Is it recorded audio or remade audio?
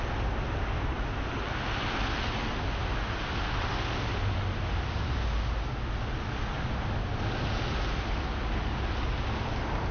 recorded